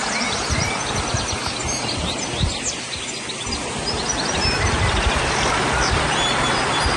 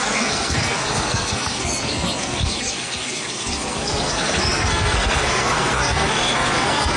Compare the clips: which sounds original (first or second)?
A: first